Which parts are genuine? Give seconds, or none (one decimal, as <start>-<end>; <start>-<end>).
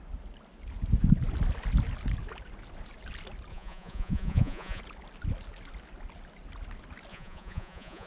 0.0-3.5; 4.8-7.1